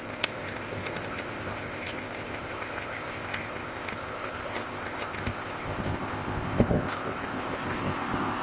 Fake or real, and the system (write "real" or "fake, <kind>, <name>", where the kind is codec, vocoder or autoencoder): fake, codec, ZipCodec